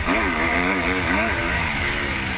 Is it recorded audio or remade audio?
remade